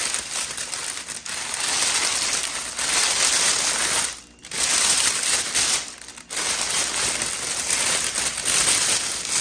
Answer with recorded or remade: recorded